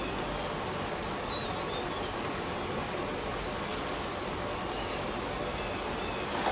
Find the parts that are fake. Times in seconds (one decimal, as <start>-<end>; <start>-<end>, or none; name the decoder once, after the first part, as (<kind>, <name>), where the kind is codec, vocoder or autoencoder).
none